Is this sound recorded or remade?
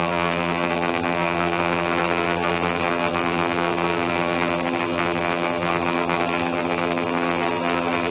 remade